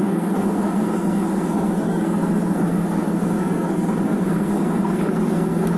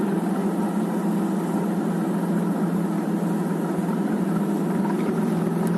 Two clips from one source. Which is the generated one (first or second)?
first